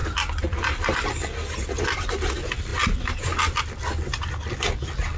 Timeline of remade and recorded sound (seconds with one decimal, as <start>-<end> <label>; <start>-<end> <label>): 0.0-1.8 remade; 1.8-5.2 recorded